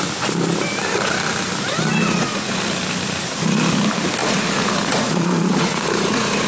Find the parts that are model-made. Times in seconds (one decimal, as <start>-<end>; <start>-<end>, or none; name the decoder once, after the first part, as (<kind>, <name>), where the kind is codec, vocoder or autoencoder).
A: 2.0-2.6 (vocoder, Vocos); 4.2-6.5